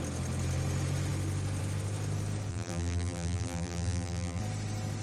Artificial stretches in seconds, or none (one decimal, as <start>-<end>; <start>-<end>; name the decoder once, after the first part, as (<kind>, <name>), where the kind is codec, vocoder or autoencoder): 2.5-4.4 (vocoder, BigVGAN v2)